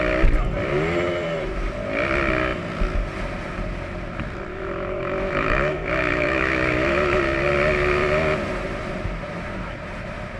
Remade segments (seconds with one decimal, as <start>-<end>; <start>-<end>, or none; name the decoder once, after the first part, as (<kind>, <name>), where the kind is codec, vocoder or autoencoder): 4.5-7.2 (autoencoder, DAC-VAE)